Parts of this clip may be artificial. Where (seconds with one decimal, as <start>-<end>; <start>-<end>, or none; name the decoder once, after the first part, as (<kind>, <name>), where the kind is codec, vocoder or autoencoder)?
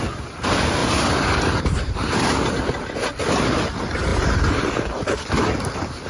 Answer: 0.8-2.1 (vocoder, BigVGAN v2); 4.1-4.9